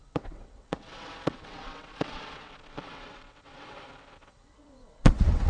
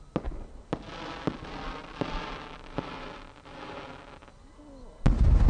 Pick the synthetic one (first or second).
first